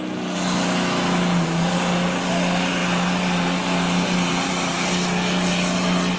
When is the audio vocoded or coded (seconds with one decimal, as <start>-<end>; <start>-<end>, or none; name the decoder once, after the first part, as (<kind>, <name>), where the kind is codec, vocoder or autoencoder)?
none